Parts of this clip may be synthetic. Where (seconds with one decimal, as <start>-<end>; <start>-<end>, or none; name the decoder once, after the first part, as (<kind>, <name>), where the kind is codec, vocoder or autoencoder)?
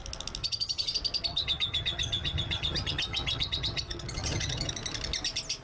0.4-0.9 (vocoder, HiFi-GAN); 1.3-4.7